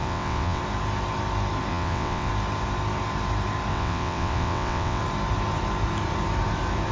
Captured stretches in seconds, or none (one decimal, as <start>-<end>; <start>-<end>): 0.6-1.7; 2.3-3.7; 5.0-6.9